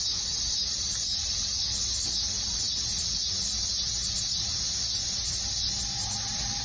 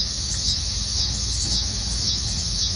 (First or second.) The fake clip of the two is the second